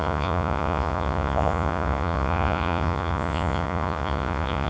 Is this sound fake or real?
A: fake